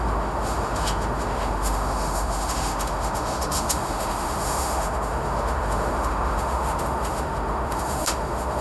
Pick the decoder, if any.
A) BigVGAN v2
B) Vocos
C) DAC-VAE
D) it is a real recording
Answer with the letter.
C